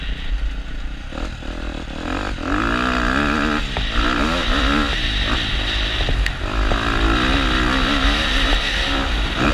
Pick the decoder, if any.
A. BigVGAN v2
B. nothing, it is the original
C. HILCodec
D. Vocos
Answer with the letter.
B